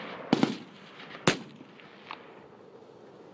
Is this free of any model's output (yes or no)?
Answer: yes